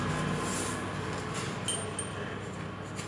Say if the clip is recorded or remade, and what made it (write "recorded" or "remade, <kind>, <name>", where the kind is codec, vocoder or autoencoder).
recorded